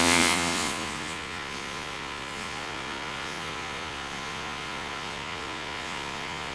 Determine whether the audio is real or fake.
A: fake